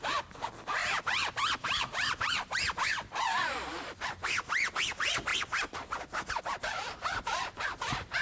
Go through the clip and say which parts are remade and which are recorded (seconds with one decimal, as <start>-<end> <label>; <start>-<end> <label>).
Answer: 0.0-8.2 recorded